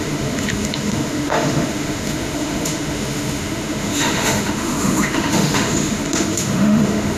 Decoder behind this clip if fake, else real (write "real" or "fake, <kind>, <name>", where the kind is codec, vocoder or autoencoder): fake, autoencoder, DAC-VAE